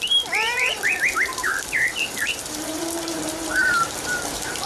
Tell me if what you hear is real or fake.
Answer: fake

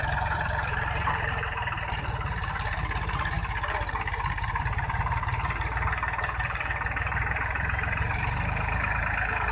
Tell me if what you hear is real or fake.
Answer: fake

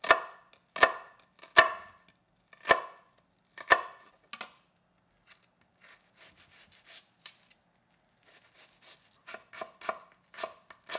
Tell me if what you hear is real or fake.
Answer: real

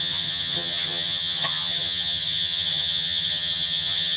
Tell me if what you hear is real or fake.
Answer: fake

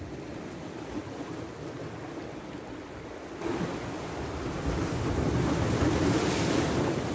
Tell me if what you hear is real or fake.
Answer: real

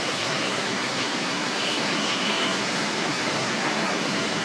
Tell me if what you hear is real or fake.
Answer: fake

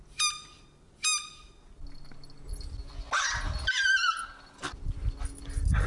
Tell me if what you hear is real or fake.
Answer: real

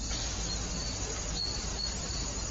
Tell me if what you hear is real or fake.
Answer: real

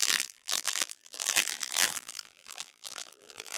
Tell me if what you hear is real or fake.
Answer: fake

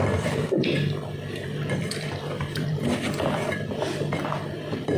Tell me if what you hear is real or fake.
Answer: fake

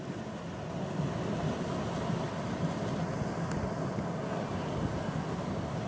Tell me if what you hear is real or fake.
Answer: real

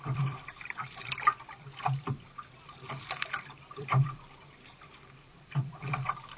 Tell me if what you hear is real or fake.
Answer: fake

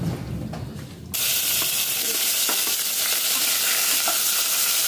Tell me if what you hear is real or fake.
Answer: real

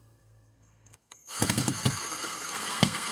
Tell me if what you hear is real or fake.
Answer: fake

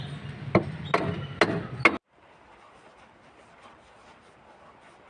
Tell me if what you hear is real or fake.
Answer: real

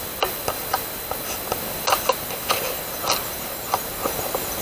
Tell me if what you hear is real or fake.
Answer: real